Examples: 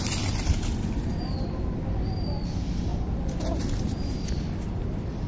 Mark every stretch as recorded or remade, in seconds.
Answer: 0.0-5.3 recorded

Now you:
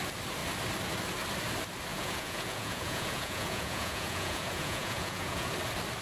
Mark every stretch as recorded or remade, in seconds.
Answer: 0.0-1.9 recorded; 1.9-5.5 remade; 5.5-6.0 recorded

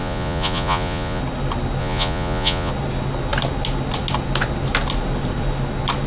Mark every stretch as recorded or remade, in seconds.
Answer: 0.0-1.2 remade; 1.2-1.8 recorded; 1.8-2.7 remade; 2.7-6.1 recorded

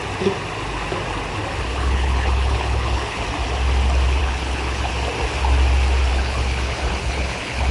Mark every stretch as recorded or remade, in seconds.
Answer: 0.0-1.7 recorded; 1.7-3.2 remade; 3.2-4.2 recorded; 4.2-4.9 remade; 4.9-6.1 recorded; 6.1-7.7 remade

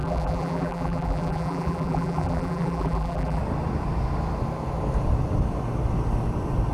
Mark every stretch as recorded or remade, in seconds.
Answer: 0.0-3.4 remade; 3.4-6.7 recorded

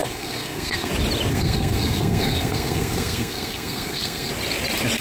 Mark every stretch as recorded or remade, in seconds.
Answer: 0.0-0.9 remade; 0.9-1.3 recorded; 1.3-4.3 remade; 4.3-5.0 recorded